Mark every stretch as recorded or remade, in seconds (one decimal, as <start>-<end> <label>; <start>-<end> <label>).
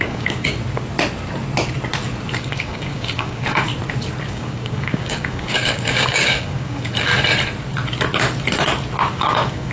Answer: 0.0-0.6 remade; 0.6-2.4 recorded; 2.4-3.7 remade; 3.7-4.3 recorded; 4.3-7.1 remade; 7.1-9.0 recorded; 9.0-9.7 remade